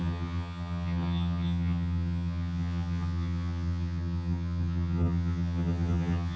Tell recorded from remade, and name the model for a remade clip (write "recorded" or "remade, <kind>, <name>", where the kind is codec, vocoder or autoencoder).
remade, vocoder, HiFi-GAN